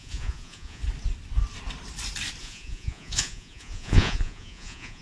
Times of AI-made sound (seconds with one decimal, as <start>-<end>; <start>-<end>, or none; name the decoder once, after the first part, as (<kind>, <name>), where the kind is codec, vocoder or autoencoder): 0.0-0.8 (vocoder, Vocos); 2.4-5.0